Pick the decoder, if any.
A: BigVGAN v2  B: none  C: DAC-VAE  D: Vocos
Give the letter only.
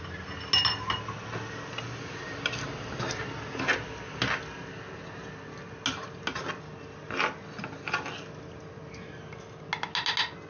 B